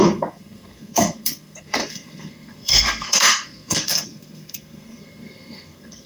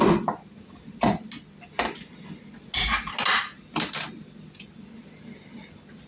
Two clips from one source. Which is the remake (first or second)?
first